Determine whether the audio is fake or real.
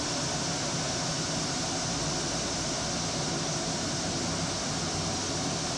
real